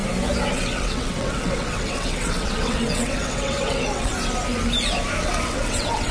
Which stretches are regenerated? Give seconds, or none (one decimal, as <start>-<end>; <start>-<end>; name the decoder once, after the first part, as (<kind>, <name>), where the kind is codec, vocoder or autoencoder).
0.5-4.1 (vocoder, WaveNeXt); 5.2-6.1